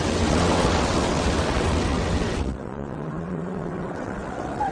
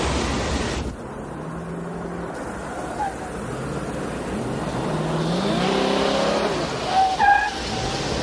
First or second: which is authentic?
second